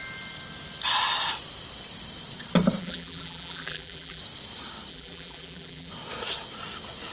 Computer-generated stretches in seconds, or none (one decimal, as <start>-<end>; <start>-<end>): 2.8-4.2; 4.9-5.9